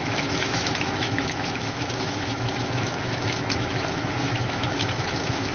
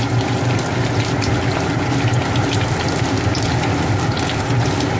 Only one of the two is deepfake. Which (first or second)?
first